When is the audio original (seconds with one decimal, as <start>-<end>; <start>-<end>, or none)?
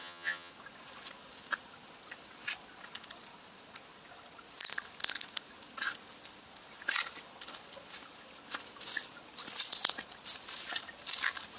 0.5-11.6